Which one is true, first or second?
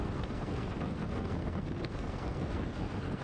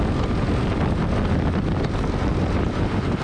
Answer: second